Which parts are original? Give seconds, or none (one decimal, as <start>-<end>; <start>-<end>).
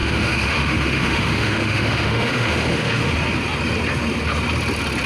3.1-5.1